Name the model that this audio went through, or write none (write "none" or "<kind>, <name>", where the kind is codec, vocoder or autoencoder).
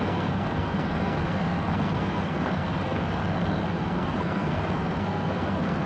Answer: codec, SNAC